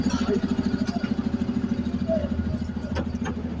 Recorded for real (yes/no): yes